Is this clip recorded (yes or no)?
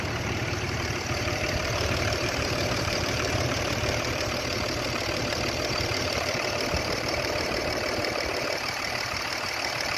no